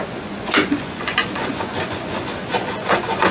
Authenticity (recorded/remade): remade